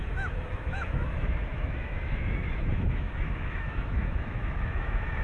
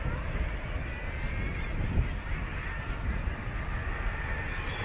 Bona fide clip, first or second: second